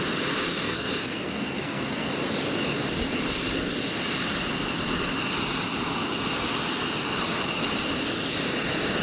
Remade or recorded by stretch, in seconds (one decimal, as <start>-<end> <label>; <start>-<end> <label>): 0.0-0.5 recorded; 0.5-2.1 remade; 2.1-9.0 recorded